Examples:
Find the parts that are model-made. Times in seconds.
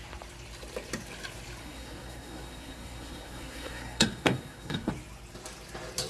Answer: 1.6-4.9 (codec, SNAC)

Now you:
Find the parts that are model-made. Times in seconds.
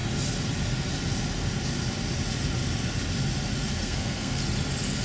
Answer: 3.8-4.4 (codec, SNAC)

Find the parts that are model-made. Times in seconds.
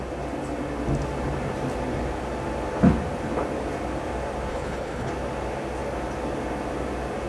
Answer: 4.5-5.1 (codec, HILCodec)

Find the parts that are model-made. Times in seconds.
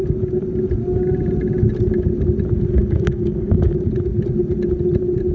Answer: 2.8-3.7 (codec, DAC)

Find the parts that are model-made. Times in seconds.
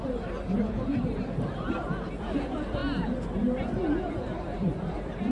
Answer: 0.0-2.8 (vocoder, BigVGAN v2); 4.1-5.3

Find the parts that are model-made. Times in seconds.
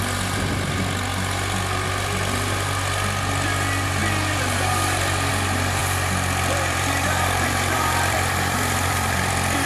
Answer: 5.8-9.7 (vocoder, BigVGAN v2)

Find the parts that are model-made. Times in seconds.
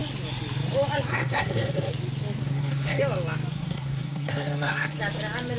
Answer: 1.1-1.9 (codec, SNAC); 2.4-3.0; 3.5-5.0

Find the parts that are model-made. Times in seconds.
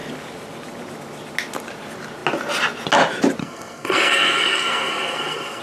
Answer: 3.4-5.6 (codec, SNAC)